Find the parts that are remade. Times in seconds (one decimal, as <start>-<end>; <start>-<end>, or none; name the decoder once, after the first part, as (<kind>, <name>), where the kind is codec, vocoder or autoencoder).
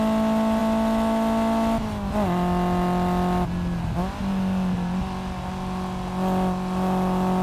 none